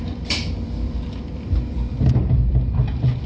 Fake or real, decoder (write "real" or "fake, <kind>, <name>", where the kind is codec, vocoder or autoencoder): fake, vocoder, BigVGAN v2